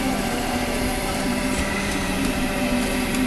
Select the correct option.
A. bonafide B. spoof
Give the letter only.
B